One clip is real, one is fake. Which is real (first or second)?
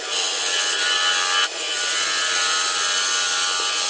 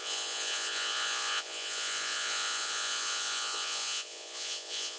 first